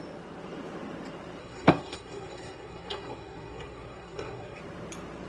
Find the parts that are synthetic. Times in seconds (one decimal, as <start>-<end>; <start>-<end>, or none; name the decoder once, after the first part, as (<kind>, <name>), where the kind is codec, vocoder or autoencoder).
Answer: 1.4-4.6 (codec, SNAC)